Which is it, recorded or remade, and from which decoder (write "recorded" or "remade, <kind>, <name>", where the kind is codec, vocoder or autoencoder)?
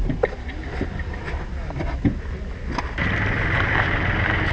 recorded